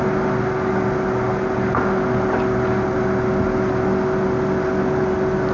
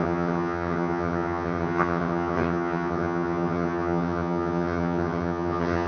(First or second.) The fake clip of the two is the second